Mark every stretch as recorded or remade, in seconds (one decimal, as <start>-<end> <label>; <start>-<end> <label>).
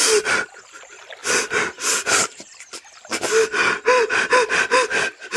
0.0-5.4 recorded